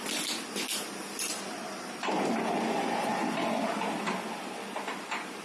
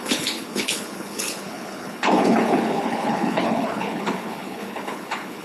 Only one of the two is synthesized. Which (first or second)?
second